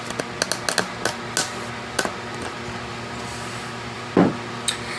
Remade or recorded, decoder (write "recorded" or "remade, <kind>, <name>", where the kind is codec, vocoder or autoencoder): recorded